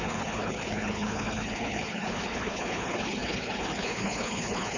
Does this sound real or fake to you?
fake